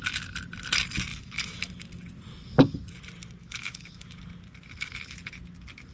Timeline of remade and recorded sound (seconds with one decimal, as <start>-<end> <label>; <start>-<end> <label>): 0.0-1.1 recorded; 1.1-1.7 remade; 1.7-3.4 recorded; 3.4-4.2 remade; 4.2-5.9 recorded